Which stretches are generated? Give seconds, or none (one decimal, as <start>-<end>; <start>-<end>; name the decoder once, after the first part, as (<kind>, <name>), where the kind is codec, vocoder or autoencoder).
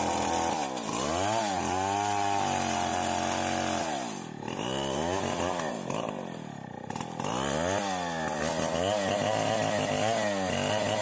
none